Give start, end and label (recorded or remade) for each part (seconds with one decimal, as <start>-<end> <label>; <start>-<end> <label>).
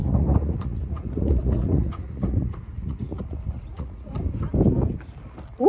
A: 0.0-4.1 remade; 4.1-5.7 recorded